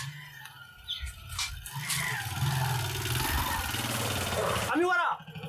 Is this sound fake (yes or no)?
no